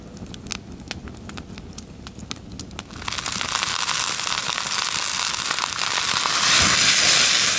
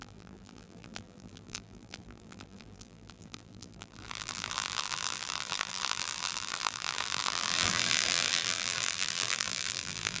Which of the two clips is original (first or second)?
first